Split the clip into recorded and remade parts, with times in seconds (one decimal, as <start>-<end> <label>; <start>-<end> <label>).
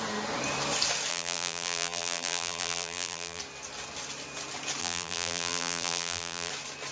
0.0-1.1 recorded; 1.1-3.4 remade; 3.4-4.8 recorded; 4.8-6.5 remade; 6.5-6.9 recorded